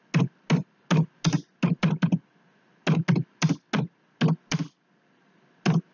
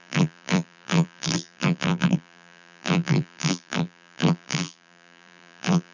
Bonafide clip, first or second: first